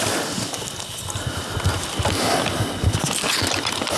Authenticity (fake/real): real